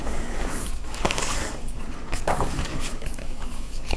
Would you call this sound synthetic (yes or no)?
yes